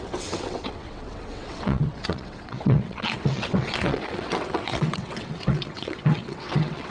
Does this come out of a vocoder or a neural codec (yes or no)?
yes